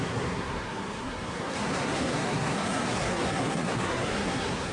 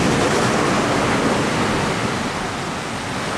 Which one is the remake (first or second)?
first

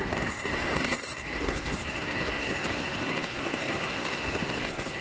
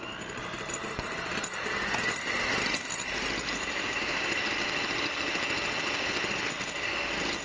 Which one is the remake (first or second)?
first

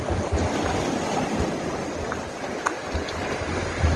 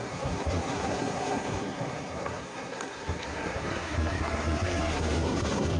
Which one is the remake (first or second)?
second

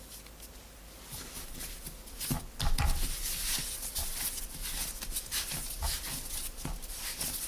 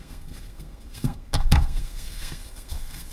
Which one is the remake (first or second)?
second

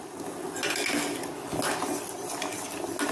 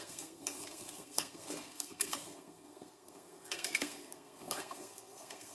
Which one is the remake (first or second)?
second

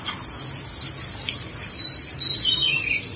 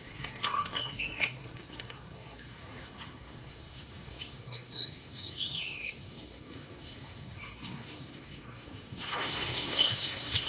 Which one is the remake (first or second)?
second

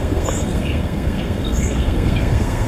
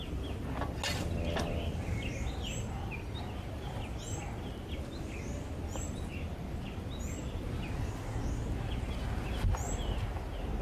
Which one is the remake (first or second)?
first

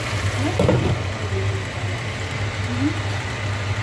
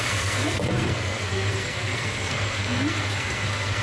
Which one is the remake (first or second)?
second